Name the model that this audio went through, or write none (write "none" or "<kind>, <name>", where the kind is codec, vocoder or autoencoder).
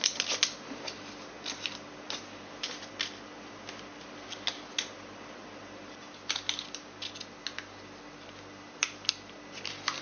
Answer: none